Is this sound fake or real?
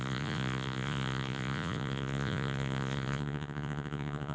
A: fake